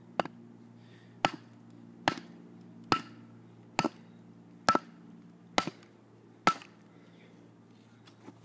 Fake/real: real